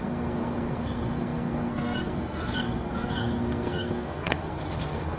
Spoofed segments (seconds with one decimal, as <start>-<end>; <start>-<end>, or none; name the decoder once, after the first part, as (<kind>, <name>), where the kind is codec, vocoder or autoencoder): 0.0-5.2 (codec, SNAC)

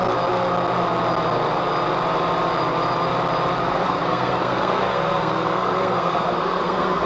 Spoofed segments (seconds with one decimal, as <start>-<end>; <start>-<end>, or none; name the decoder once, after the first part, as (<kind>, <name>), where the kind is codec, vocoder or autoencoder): 3.6-7.1 (codec, SNAC)

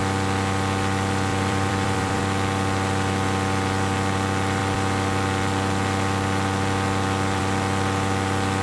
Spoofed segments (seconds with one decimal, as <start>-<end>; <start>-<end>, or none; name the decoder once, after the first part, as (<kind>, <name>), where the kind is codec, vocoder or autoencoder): 1.3-2.2 (vocoder, BigVGAN v2)

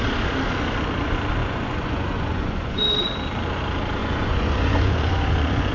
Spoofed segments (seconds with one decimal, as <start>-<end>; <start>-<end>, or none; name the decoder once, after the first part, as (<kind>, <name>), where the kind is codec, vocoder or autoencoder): 1.4-2.8 (vocoder, Vocos); 4.0-5.7

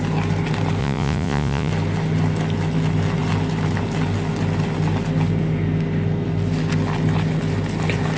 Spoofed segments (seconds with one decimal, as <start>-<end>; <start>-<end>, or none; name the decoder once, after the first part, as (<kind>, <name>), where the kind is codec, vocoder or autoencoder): 0.8-1.7 (vocoder, Vocos)

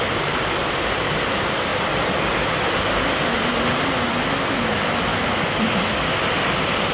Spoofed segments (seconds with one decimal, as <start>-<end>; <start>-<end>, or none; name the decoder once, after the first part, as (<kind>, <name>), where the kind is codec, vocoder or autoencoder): 1.7-2.2 (vocoder, BigVGAN v2)

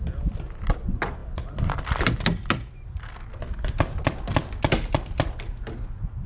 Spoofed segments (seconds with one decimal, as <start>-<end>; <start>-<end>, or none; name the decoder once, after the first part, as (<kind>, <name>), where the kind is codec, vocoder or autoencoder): none